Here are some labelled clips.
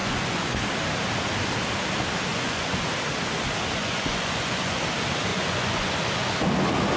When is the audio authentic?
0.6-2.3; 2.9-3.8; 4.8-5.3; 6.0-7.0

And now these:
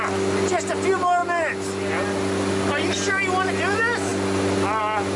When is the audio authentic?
0.0-5.2

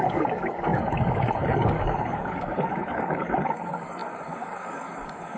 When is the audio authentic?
none